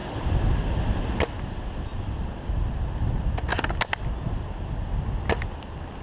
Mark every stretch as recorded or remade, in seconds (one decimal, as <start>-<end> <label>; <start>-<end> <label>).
0.0-6.0 recorded